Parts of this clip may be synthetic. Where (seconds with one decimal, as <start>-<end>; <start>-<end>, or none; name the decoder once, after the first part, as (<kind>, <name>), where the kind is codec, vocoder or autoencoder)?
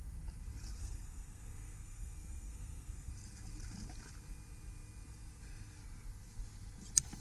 0.8-3.1 (codec, SNAC)